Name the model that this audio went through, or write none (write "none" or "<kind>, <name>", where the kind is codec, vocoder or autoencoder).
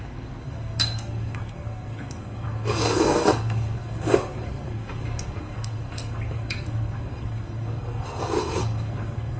codec, SNAC